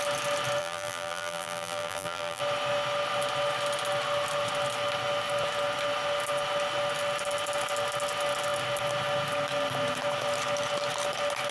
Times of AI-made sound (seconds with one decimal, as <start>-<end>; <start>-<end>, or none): 0.6-2.4